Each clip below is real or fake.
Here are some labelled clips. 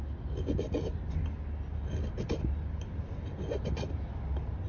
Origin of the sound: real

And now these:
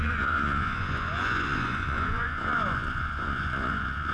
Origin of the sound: fake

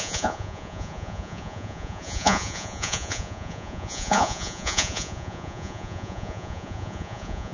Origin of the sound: fake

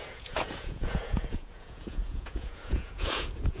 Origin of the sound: fake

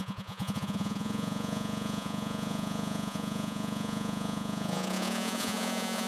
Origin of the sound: fake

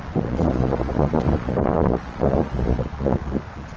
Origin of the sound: fake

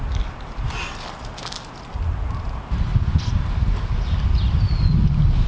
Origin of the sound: real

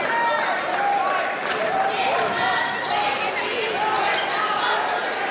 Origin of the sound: real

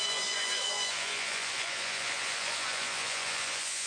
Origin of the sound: fake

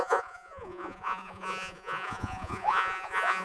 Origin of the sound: fake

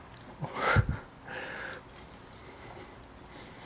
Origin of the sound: real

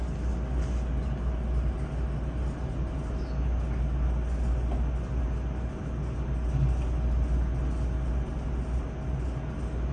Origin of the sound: real